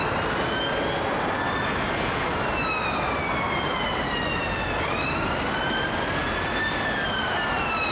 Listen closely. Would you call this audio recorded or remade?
recorded